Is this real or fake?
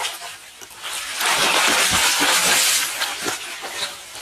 real